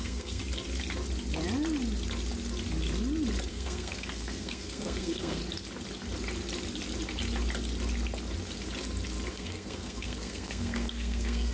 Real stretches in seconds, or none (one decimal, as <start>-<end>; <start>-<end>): 0.4-3.5; 5.4-9.3